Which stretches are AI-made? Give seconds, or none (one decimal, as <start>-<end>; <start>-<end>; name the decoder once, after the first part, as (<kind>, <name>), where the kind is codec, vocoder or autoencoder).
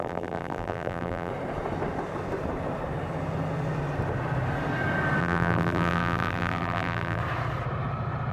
0.0-1.3 (vocoder, BigVGAN v2); 5.2-7.2